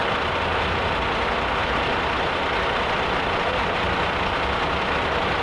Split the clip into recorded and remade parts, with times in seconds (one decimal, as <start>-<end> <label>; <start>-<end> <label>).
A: 0.0-1.6 recorded; 1.6-4.8 remade; 4.8-5.4 recorded